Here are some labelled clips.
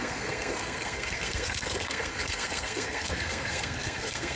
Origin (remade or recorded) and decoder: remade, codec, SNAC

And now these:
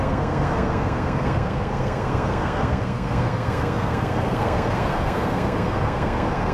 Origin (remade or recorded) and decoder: remade, codec, SNAC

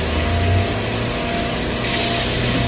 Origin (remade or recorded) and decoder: recorded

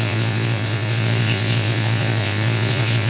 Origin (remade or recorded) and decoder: remade, vocoder, Vocos